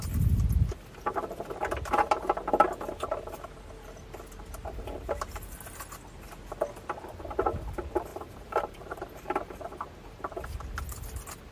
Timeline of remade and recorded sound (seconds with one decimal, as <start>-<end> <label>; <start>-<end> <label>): 0.0-8.1 recorded; 8.1-10.8 remade; 10.8-11.5 recorded